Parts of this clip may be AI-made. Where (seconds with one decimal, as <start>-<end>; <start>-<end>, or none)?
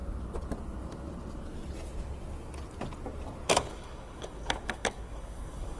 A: 3.5-5.8